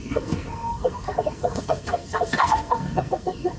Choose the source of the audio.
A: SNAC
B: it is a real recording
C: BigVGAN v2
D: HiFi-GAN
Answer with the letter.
A